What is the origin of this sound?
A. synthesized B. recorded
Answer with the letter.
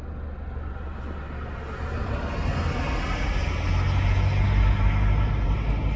B